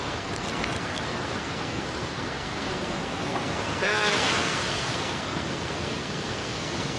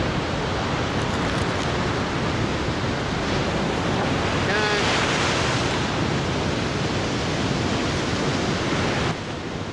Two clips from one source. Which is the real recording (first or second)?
second